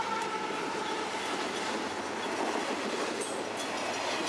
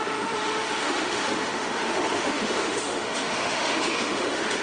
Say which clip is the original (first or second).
first